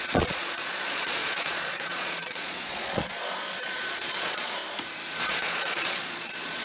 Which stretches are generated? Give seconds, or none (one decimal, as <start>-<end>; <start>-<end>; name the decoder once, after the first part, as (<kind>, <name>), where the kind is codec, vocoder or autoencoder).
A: 0.0-4.6 (vocoder, Vocos); 5.2-6.6